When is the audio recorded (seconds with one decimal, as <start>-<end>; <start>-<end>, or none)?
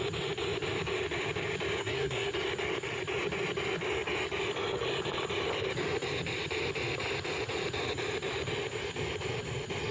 0.0-1.8; 2.3-9.9